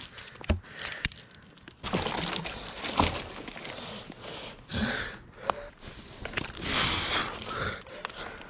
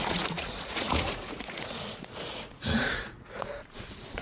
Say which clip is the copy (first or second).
second